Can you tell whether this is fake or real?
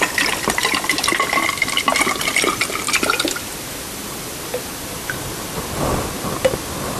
real